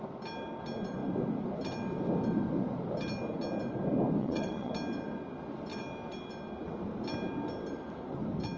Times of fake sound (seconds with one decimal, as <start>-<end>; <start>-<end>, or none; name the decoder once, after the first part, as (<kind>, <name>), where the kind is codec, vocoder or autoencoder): 4.2-4.7 (vocoder, WaveNeXt)